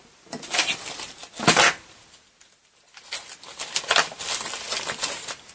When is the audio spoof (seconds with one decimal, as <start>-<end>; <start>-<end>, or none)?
none